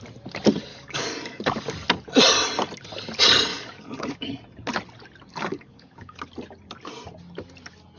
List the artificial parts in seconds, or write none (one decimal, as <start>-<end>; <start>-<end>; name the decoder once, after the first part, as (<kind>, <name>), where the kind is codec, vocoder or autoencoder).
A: 0.7-1.6 (codec, DAC); 3.5-4.3; 5.3-6.2